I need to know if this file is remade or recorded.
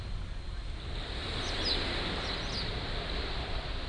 recorded